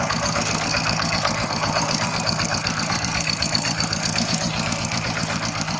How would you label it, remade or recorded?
remade